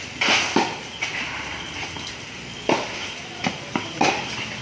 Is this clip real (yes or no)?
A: yes